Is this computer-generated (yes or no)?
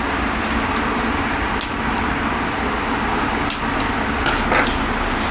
no